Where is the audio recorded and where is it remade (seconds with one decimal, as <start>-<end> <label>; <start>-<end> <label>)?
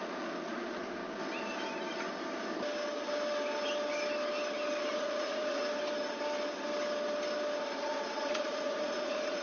0.0-1.0 remade; 1.0-4.9 recorded; 4.9-5.6 remade; 5.6-7.6 recorded; 7.6-9.4 remade